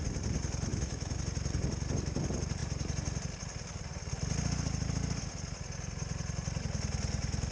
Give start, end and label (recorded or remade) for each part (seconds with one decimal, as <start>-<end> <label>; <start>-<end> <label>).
0.0-0.7 recorded; 0.7-1.2 remade; 1.2-7.5 recorded